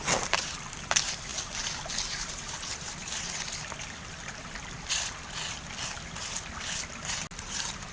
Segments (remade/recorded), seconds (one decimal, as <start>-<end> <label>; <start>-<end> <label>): 0.0-7.9 recorded